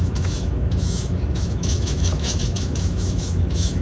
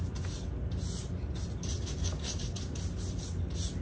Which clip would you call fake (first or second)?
first